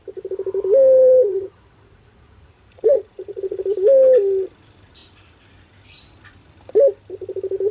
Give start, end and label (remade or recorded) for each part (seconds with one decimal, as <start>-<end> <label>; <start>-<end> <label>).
0.0-1.0 recorded; 1.0-3.6 remade; 3.6-7.7 recorded